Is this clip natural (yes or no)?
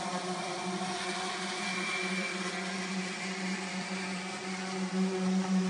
no